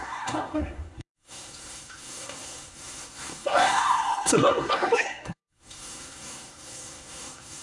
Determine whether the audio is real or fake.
fake